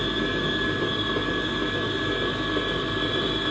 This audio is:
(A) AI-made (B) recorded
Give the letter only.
B